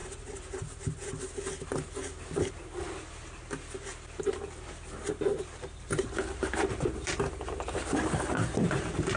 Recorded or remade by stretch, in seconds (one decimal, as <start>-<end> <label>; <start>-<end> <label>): 0.0-9.2 recorded